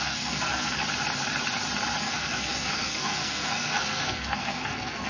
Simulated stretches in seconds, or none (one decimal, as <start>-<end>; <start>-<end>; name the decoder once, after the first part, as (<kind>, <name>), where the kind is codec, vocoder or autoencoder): 0.0-0.8 (codec, SNAC); 2.0-5.1